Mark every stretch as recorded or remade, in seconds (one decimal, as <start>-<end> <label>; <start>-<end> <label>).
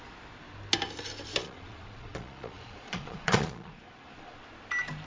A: 0.0-1.3 recorded; 1.3-4.4 remade; 4.4-5.1 recorded